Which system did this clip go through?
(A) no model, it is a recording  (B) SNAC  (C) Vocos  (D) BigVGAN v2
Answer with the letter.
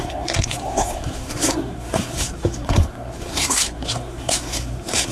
B